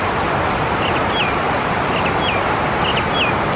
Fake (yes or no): no